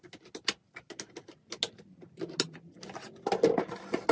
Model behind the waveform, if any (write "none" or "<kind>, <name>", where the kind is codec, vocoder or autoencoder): none